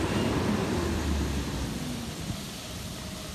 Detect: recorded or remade recorded